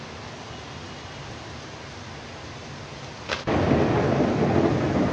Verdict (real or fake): real